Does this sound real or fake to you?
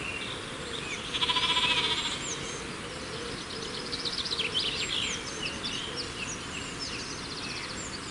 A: real